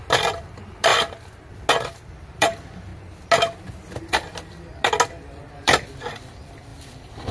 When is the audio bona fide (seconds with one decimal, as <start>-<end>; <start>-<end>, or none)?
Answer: 0.9-2.1; 2.9-5.5